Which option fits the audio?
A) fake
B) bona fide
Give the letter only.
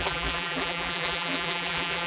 A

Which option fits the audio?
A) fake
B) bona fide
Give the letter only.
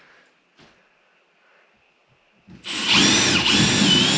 B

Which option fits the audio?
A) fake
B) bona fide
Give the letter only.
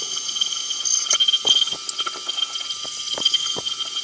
B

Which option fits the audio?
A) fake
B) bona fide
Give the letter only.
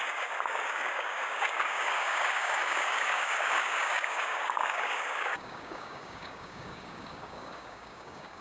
A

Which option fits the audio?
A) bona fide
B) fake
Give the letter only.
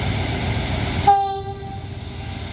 A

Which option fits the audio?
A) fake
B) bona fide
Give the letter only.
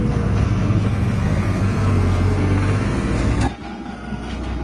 A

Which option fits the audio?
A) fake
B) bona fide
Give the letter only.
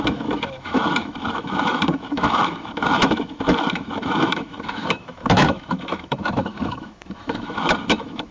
A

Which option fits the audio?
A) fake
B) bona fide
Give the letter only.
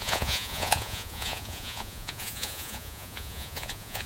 A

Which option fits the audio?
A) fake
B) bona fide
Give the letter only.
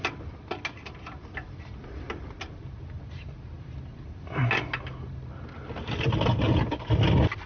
B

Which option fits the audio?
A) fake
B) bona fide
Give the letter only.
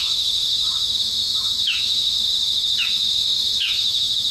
A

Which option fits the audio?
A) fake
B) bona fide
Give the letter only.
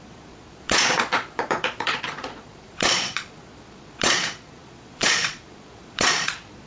A